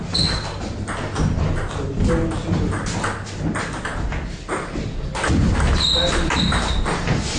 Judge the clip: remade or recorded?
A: recorded